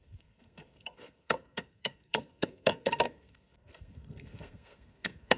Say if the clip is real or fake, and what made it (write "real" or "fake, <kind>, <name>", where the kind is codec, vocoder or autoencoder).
fake, codec, SNAC